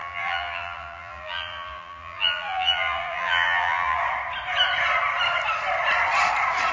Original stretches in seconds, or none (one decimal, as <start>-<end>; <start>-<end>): 4.0-6.7